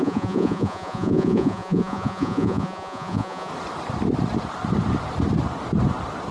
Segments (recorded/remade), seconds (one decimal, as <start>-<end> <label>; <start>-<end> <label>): 0.0-3.5 remade; 3.5-6.3 recorded